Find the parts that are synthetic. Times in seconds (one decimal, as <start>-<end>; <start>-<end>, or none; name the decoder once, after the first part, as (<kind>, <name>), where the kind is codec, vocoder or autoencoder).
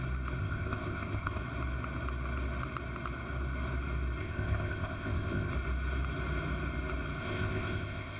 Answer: 0.4-1.4 (codec, ZipCodec); 4.2-5.5; 7.2-8.2